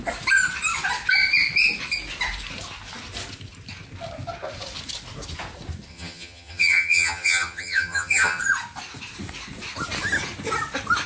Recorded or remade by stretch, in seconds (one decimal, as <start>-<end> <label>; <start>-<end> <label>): 0.0-5.9 recorded; 5.9-8.4 remade; 8.4-11.1 recorded